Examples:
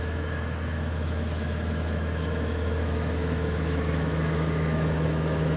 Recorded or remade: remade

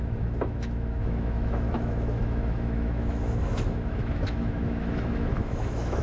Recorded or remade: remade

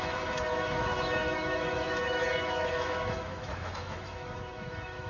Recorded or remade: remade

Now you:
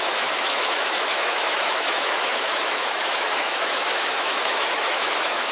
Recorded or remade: remade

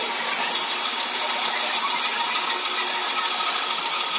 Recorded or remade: recorded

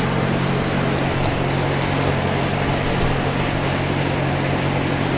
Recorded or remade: recorded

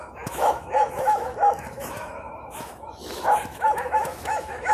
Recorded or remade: remade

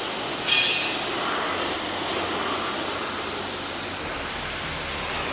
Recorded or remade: recorded